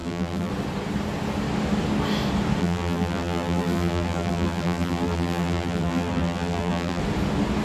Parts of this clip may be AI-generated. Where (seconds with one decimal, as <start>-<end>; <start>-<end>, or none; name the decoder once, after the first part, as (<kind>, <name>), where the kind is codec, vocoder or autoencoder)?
0.0-0.5 (vocoder, BigVGAN v2); 2.6-7.0